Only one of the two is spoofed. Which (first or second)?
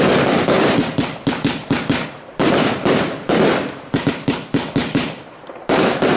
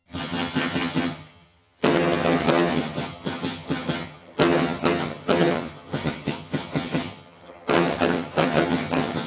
second